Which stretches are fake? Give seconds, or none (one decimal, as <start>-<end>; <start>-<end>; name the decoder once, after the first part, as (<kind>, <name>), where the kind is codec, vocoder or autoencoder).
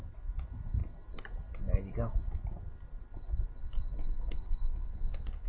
4.7-5.5 (vocoder, Vocos)